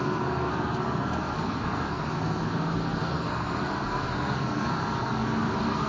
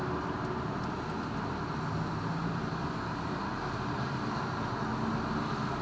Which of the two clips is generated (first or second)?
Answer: first